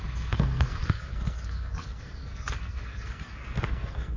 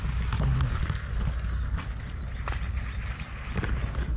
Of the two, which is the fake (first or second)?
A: first